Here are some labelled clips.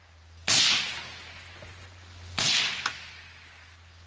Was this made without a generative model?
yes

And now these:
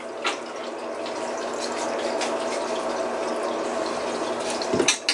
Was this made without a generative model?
yes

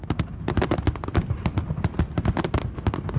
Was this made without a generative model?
yes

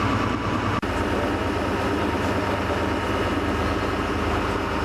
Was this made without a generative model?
yes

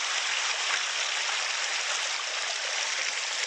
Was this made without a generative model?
yes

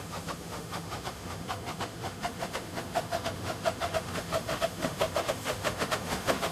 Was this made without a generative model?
no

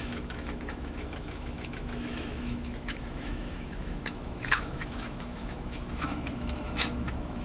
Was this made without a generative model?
no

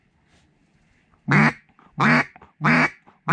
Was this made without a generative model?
yes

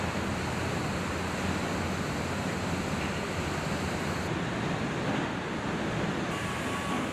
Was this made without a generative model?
yes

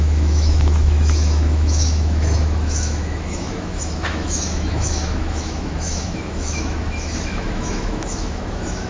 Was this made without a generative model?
no